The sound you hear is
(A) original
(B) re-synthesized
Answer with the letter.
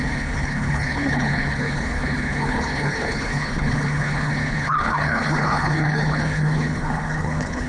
B